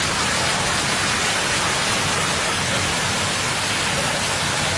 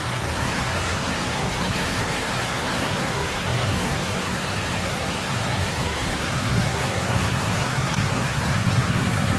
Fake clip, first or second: second